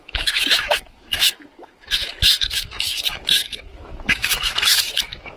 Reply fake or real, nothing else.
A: fake